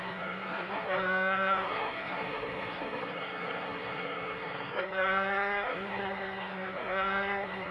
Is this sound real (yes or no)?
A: no